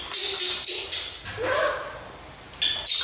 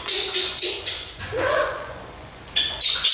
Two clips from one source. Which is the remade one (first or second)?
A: second